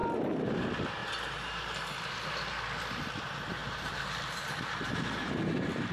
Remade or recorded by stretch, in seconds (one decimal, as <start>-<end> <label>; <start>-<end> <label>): 0.0-3.6 recorded; 3.6-5.9 remade